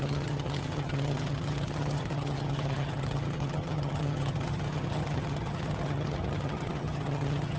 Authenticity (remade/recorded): remade